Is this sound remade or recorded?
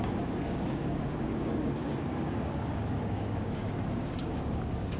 remade